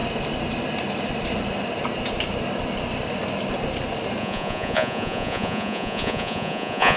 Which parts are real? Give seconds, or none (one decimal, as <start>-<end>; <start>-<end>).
0.0-4.2